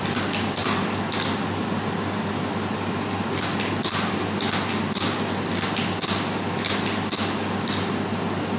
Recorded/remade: recorded